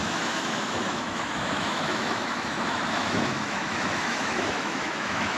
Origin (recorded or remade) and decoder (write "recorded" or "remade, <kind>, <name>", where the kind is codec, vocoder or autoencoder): remade, autoencoder, DAC-VAE